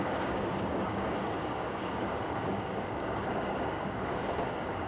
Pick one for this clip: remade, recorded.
remade